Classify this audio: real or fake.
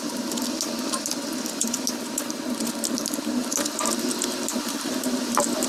real